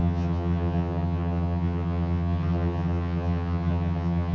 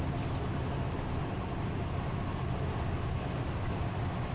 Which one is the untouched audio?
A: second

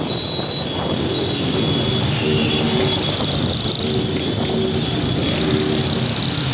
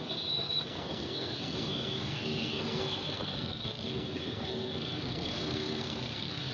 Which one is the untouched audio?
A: first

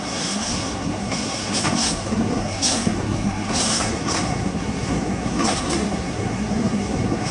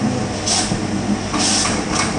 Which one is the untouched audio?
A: second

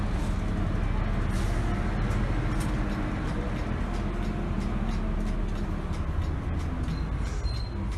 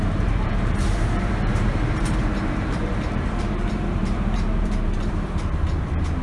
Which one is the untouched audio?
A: first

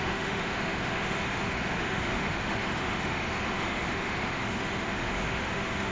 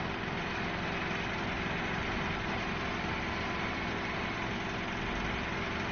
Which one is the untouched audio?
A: second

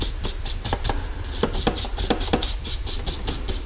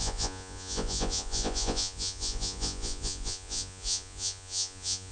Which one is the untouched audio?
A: first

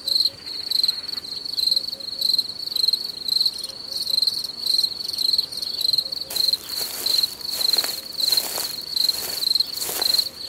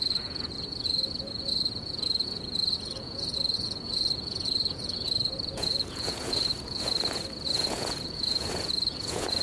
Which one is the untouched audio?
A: first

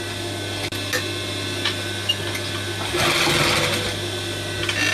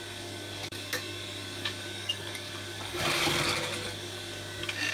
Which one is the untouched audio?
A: first